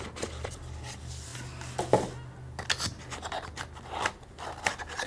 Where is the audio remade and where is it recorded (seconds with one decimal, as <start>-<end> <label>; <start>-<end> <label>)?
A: 0.0-5.1 recorded